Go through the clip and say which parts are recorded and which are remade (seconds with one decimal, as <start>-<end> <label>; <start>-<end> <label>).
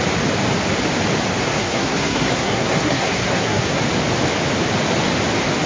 0.0-1.4 recorded; 1.4-3.8 remade; 3.8-5.7 recorded